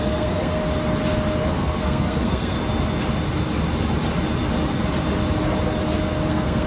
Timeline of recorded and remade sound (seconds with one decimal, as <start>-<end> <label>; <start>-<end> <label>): 0.0-0.6 remade; 0.6-1.4 recorded; 1.4-2.6 remade; 2.6-6.3 recorded; 6.3-6.7 remade